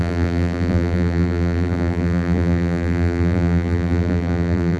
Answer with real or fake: fake